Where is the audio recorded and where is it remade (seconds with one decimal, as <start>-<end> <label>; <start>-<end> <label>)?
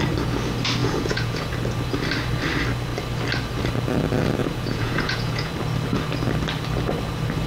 0.0-0.8 recorded; 0.8-1.5 remade; 1.5-4.4 recorded; 4.4-5.5 remade; 5.5-7.5 recorded